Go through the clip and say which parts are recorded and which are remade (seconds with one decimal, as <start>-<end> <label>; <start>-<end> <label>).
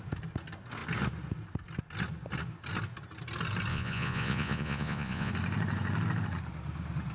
0.0-3.7 recorded; 3.7-5.3 remade; 5.3-7.1 recorded